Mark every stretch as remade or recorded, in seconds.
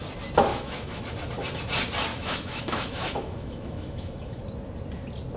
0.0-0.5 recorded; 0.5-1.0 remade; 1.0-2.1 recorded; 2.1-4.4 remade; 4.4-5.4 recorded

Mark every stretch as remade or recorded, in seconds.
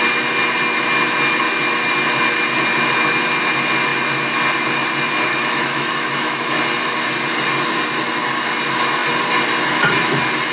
0.0-5.3 recorded; 5.3-6.4 remade; 6.4-10.5 recorded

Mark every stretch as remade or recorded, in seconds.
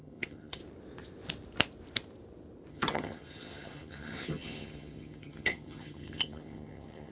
0.0-0.6 remade; 0.6-2.7 recorded; 2.7-7.1 remade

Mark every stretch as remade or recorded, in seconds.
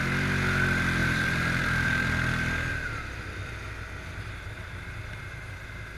0.0-1.0 recorded; 1.0-2.1 remade; 2.1-6.0 recorded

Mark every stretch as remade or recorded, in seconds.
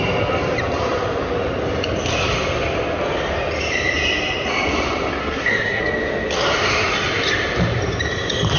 0.0-5.2 recorded; 5.2-5.8 remade; 5.8-8.6 recorded